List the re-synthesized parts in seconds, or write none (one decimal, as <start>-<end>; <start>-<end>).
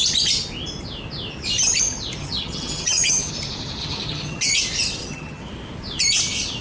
2.2-3.3; 3.8-4.6; 5.0-5.5